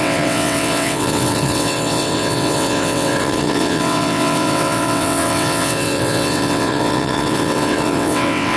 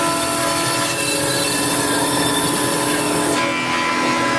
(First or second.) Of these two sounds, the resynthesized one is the first